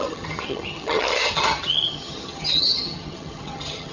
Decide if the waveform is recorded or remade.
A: remade